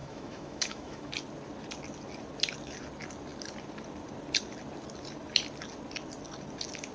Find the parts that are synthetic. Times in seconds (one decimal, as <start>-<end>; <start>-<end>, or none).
0.0-1.1